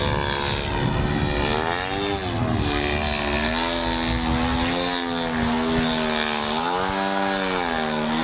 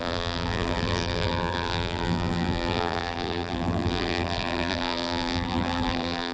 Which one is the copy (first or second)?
second